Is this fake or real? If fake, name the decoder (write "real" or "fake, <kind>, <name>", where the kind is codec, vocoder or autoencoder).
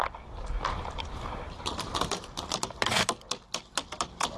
real